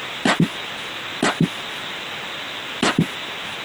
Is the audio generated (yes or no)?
no